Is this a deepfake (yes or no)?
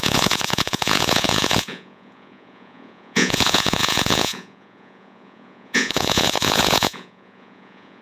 yes